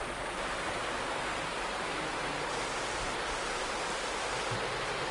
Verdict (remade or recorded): recorded